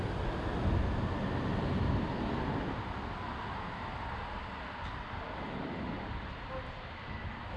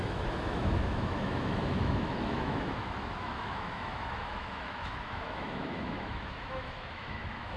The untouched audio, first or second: first